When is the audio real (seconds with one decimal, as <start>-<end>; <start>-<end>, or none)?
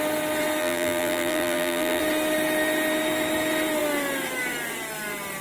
0.0-0.6; 2.0-5.4